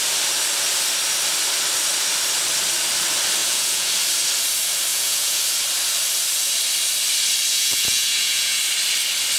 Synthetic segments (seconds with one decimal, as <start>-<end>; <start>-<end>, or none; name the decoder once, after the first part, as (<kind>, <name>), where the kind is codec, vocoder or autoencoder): 3.4-3.9 (vocoder, Vocos); 4.9-5.4; 7.5-8.6